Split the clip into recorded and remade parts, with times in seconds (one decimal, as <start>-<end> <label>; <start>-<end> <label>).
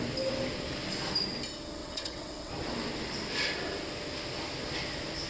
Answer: 0.0-1.8 recorded; 1.8-2.5 remade; 2.5-5.3 recorded